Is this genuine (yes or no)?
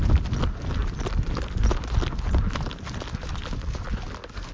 yes